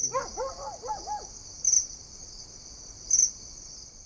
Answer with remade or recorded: recorded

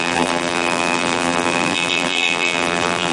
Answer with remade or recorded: remade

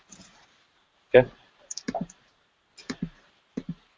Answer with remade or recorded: remade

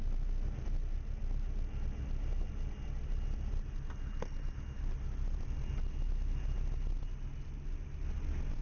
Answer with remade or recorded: recorded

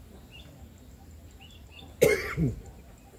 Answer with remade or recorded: recorded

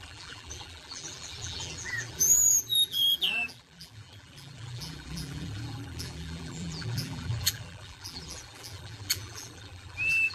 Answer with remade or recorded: remade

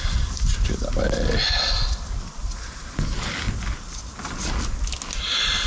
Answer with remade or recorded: recorded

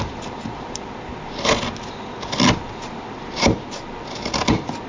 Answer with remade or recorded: recorded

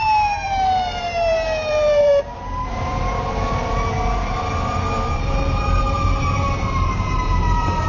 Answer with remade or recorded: remade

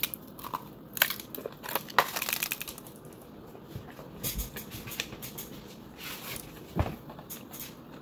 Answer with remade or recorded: recorded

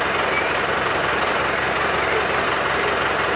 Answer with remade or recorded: remade